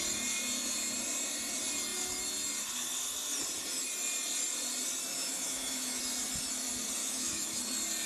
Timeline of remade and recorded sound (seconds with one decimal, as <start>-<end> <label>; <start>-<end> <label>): 0.0-5.1 recorded; 5.1-6.0 remade; 6.0-7.0 recorded; 7.0-7.6 remade; 7.6-8.1 recorded